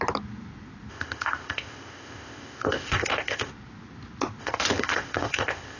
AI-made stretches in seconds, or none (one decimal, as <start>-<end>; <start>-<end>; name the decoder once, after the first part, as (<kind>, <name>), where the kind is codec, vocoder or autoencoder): 0.9-3.5 (codec, ZipCodec); 4.4-5.8